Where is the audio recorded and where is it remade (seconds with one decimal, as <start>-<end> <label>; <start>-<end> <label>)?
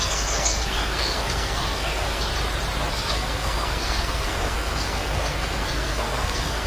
0.0-2.3 remade; 2.3-2.9 recorded; 2.9-6.7 remade